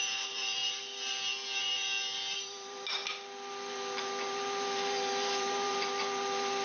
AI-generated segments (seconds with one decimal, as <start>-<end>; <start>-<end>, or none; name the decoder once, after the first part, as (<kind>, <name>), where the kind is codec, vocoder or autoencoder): 0.0-0.6 (vocoder, BigVGAN v2); 1.6-3.0; 3.7-6.6